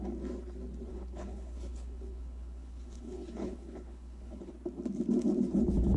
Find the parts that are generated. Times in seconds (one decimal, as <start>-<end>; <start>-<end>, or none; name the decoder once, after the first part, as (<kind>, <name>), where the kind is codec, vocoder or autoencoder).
0.9-4.5 (codec, HILCodec)